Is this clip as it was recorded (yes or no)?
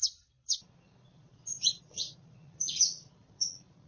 no